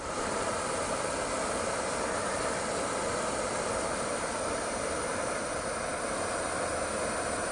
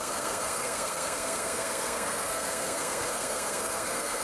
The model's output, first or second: second